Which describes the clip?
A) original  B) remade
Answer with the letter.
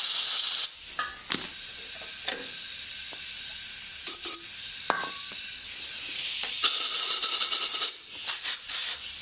A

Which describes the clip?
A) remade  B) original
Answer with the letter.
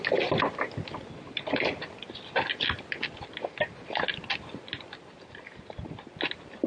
A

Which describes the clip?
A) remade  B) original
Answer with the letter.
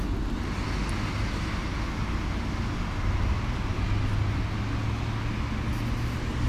B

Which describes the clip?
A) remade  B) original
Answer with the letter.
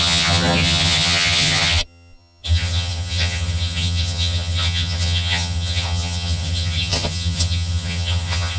A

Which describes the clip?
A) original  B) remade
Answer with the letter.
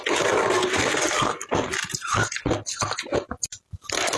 A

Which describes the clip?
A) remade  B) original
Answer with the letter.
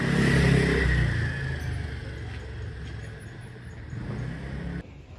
B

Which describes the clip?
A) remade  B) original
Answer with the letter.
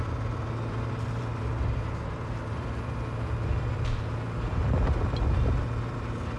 A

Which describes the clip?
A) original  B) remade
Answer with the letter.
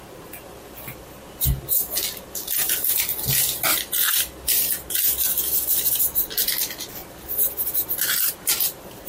A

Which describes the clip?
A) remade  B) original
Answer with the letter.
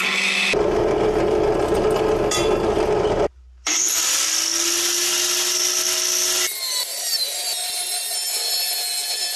B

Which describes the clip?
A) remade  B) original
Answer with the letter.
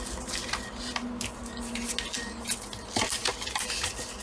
B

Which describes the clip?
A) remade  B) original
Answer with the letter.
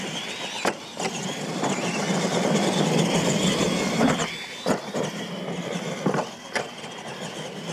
B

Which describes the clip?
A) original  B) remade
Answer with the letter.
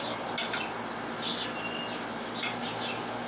A